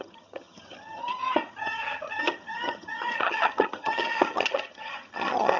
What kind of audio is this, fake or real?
fake